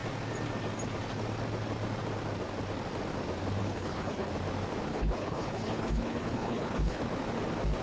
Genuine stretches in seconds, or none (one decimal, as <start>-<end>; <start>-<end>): 0.0-3.6; 4.3-4.9; 7.0-7.8